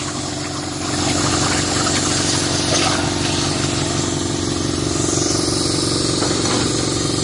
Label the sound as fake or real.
real